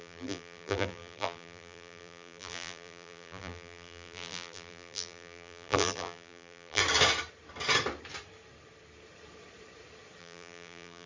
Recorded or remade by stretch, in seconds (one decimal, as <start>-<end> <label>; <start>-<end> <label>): 0.0-6.8 remade; 6.8-10.2 recorded; 10.2-11.1 remade